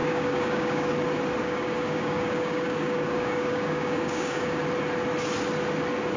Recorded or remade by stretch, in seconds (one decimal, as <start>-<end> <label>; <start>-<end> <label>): 0.0-0.9 remade; 0.9-1.4 recorded; 1.4-4.6 remade; 4.6-6.2 recorded